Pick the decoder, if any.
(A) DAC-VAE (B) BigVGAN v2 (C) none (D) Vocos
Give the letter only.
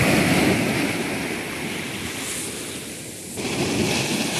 C